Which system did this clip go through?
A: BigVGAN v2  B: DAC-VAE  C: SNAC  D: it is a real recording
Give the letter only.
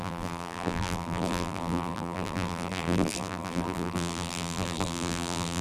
A